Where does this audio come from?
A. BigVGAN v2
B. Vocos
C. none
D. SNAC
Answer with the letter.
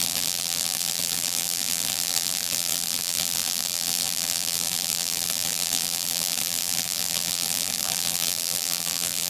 A